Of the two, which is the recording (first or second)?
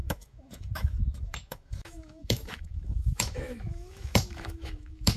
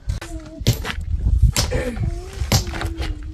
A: second